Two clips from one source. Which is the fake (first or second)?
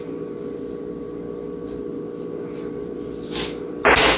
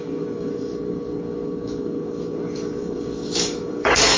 second